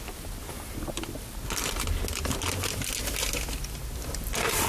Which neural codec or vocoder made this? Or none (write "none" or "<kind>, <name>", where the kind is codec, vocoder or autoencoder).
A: none